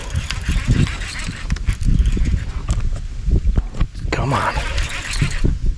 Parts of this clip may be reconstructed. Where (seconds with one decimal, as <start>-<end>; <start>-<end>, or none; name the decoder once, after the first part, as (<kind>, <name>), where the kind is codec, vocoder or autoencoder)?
none